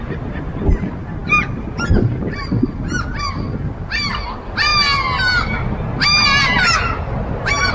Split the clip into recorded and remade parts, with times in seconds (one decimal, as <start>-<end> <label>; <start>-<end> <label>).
0.0-7.7 recorded